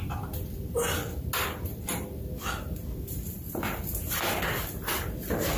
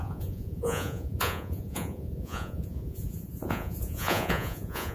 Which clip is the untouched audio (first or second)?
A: first